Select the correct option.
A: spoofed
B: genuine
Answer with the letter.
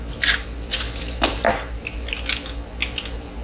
B